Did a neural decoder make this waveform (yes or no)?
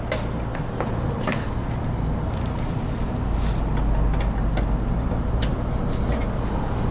no